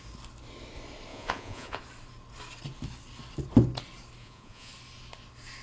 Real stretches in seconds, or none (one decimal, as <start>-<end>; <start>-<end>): 0.0-1.1; 1.8-4.2; 4.7-5.6